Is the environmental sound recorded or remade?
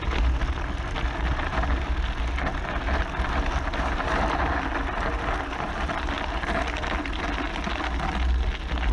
recorded